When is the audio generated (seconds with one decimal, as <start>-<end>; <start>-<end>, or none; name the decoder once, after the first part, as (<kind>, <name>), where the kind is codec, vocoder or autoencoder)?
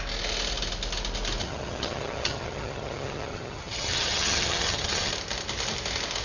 1.4-5.1 (vocoder, HiFi-GAN)